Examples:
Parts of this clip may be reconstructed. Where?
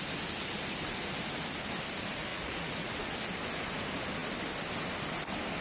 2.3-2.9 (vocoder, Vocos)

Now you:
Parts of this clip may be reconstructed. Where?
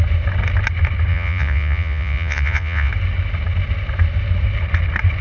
1.1-2.9 (vocoder, Vocos)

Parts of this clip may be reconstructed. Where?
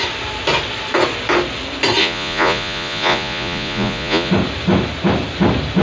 2.0-4.3 (vocoder, Vocos)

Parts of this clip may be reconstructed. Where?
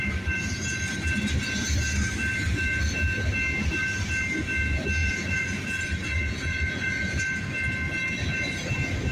5.0-7.2 (vocoder, Vocos)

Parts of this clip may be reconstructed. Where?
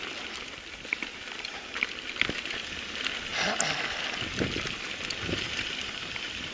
none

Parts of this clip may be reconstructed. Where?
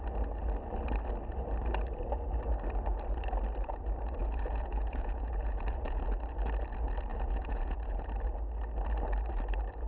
4.2-6.0 (vocoder, Vocos); 7.1-8.1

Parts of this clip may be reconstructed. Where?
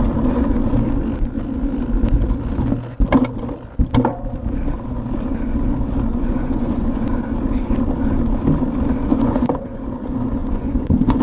6.1-7.0 (vocoder, Vocos); 9.1-9.8; 10.4-11.2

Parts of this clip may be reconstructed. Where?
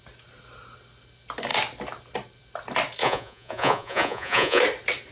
3.0-4.6 (vocoder, Vocos)